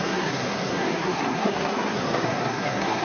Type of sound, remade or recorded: remade